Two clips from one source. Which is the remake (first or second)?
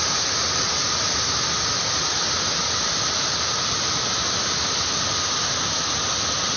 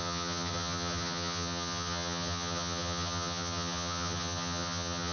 second